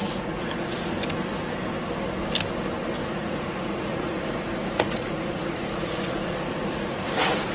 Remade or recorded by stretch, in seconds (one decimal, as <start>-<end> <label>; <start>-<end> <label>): 0.0-0.8 remade; 0.8-3.0 recorded; 3.0-7.5 remade